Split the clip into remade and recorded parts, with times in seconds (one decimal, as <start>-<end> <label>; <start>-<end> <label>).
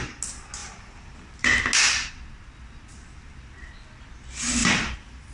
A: 0.0-0.6 recorded; 0.6-1.6 remade; 1.6-4.6 recorded; 4.6-5.3 remade